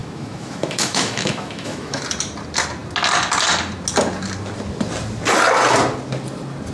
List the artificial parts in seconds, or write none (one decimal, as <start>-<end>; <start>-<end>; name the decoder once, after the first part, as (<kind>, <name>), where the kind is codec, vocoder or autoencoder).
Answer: 0.0-2.0 (autoencoder, DAC-VAE)